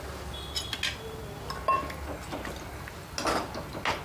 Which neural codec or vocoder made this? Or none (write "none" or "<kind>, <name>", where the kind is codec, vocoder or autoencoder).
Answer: none